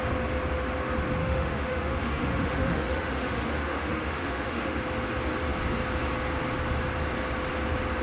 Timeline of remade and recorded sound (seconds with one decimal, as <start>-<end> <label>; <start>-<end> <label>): 0.0-1.2 recorded; 1.2-4.8 remade; 4.8-8.0 recorded

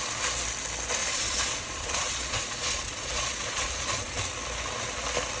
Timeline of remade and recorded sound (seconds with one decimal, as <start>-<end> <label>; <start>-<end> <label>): 0.0-1.0 recorded; 1.0-4.2 remade; 4.2-5.4 recorded

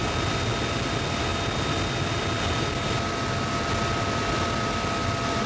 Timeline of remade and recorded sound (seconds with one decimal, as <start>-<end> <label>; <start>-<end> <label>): 0.0-5.5 recorded

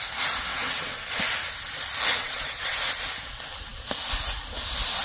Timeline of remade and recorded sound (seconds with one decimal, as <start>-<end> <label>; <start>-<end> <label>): 0.0-0.5 recorded; 0.5-1.2 remade; 1.2-2.1 recorded; 2.1-2.7 remade; 2.7-5.0 recorded

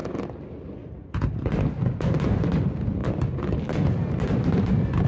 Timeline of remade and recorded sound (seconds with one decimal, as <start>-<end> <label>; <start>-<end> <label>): 0.0-5.1 recorded

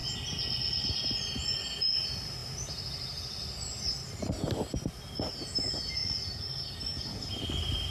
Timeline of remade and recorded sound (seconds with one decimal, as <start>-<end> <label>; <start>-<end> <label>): 0.0-7.9 recorded

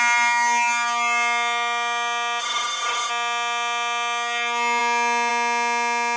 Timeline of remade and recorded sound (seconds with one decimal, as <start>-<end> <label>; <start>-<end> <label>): 0.0-2.4 recorded; 2.4-3.1 remade; 3.1-6.2 recorded

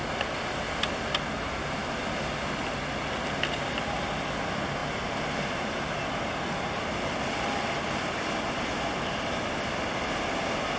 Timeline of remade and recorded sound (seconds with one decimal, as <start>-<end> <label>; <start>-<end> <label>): 0.0-10.8 recorded